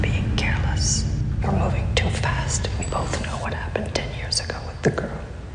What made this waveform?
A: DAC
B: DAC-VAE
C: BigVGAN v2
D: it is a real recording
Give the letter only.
D